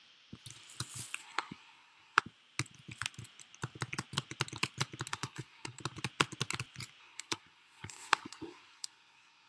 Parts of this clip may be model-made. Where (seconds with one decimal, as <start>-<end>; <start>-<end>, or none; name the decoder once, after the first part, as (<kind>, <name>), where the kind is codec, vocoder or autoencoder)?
1.2-2.2 (codec, SNAC); 5.1-5.8; 7.0-9.5